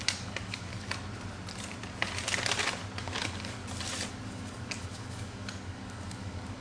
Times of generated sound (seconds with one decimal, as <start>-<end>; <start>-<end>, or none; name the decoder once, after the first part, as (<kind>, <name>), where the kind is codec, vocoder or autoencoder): 0.0-0.7 (codec, DAC); 3.0-3.6; 4.1-6.6

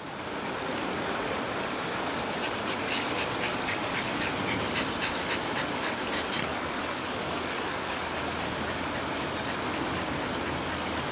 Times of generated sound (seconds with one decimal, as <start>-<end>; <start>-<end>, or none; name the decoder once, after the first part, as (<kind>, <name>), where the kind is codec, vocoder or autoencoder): 3.5-4.3 (codec, DAC); 6.5-8.2

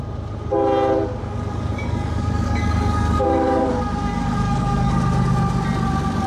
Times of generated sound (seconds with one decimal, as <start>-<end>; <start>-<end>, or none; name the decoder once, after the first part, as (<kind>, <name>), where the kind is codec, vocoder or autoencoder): 1.2-5.0 (codec, DAC)

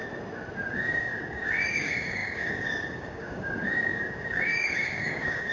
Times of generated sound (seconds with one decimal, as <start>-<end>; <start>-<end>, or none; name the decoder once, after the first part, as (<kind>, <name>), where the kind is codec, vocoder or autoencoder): 0.7-5.5 (codec, DAC)

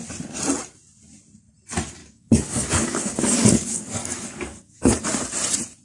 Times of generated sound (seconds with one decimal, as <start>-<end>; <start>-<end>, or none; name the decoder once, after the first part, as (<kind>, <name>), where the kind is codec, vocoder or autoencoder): 2.0-5.1 (codec, DAC)

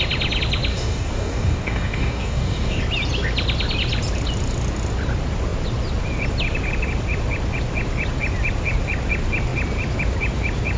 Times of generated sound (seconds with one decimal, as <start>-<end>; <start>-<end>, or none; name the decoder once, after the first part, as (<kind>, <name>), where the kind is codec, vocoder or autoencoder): 0.7-2.8 (codec, DAC)

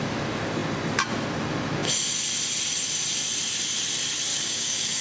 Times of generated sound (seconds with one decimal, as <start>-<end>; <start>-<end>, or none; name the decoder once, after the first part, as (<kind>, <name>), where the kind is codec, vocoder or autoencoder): 4.3-5.0 (codec, DAC)

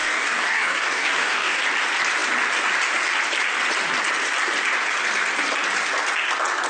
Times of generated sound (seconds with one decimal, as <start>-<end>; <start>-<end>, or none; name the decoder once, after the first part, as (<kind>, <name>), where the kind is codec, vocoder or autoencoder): 0.0-1.6 (codec, DAC)